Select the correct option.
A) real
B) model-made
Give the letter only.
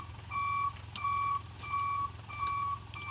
A